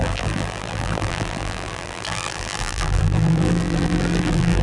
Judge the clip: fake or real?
fake